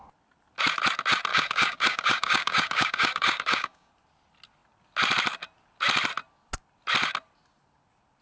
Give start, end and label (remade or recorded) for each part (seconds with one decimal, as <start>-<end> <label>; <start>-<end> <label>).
0.0-1.3 recorded; 1.3-3.9 remade; 3.9-8.2 recorded